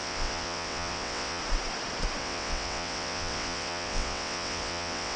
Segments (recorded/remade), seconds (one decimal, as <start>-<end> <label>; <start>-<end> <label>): 0.0-1.4 remade; 1.4-2.2 recorded; 2.2-5.2 remade